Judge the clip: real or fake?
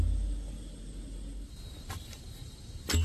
real